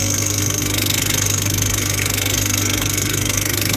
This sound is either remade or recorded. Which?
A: remade